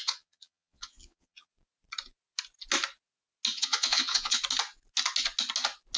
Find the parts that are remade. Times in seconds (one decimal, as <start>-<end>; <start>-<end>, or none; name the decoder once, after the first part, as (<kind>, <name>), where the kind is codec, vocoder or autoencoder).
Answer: 0.0-1.5 (vocoder, Vocos); 3.5-4.4